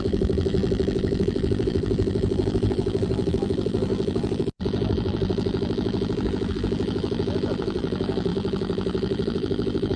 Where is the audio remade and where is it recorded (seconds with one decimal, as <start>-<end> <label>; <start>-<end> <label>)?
0.0-10.0 remade